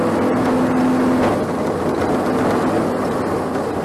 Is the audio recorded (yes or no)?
yes